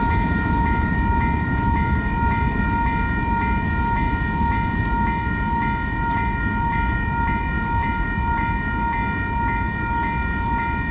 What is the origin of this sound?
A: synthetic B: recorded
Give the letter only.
B